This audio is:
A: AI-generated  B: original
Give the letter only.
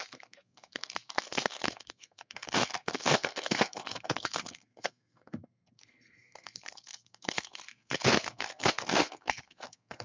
A